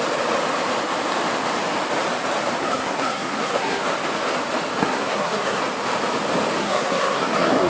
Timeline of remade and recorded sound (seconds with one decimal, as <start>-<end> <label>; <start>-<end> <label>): 0.0-2.6 recorded; 2.6-3.8 remade; 3.8-4.8 recorded; 4.8-5.6 remade; 5.6-6.6 recorded; 6.6-7.7 remade